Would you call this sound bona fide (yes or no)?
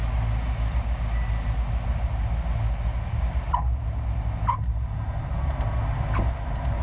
yes